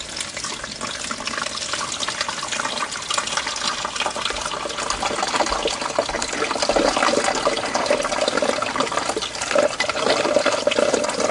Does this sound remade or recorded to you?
recorded